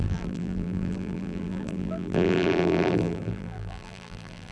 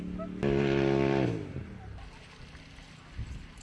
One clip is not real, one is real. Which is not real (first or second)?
first